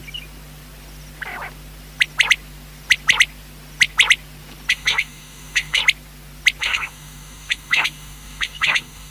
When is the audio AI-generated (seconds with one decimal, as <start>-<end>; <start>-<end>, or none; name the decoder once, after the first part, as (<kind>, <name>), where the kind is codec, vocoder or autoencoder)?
4.7-5.8 (codec, DAC); 6.6-9.1